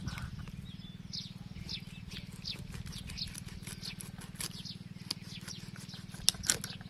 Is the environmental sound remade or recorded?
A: recorded